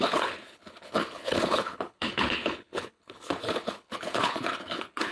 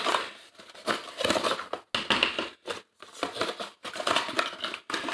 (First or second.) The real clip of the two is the second